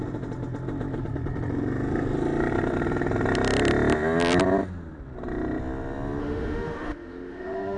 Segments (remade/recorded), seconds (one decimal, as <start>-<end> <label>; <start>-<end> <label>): 0.0-6.2 recorded; 6.2-7.8 remade